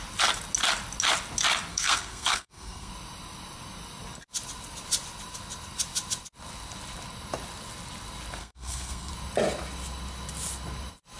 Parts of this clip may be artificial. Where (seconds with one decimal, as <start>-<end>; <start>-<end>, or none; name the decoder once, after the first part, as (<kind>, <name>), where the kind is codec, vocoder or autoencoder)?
1.7-2.9 (codec, SNAC); 8.4-9.1